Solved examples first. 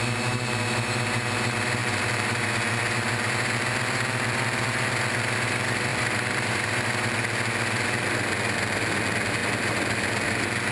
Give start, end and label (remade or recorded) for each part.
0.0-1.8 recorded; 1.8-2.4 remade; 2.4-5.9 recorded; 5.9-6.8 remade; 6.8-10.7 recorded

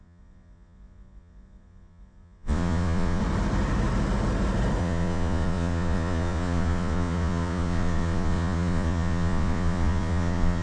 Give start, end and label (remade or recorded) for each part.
0.0-3.2 remade; 3.2-4.8 recorded; 4.8-10.6 remade